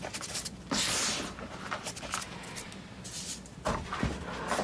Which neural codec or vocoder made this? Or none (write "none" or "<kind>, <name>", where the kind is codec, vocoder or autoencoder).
none